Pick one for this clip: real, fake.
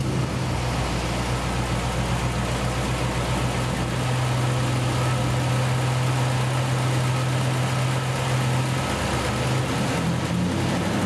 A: real